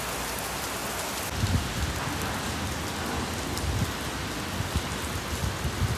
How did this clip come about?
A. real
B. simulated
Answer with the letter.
A